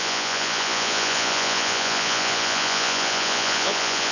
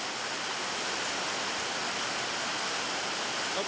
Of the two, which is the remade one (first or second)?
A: first